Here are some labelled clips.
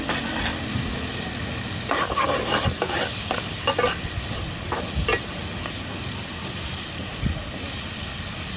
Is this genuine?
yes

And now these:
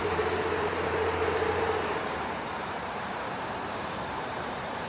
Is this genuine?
no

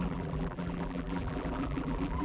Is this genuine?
no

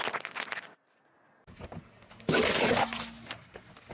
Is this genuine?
yes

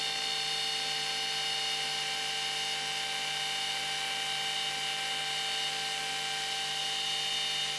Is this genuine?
yes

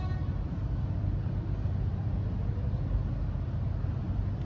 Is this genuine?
yes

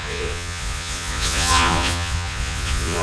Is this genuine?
no